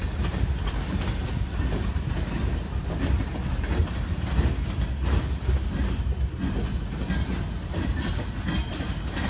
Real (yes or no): yes